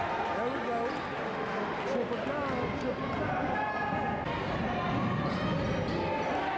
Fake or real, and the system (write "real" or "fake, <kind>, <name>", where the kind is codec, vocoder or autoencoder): real